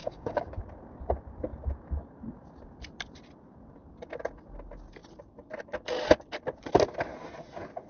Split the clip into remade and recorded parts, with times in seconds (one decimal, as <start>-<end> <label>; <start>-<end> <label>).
0.0-0.6 remade; 0.6-7.9 recorded